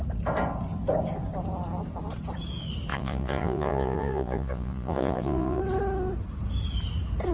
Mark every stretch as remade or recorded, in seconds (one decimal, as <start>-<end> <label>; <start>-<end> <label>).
0.0-2.9 recorded; 2.9-5.6 remade; 5.6-7.3 recorded